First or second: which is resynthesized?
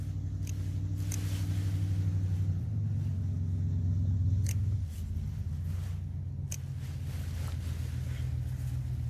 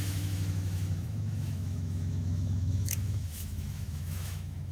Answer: second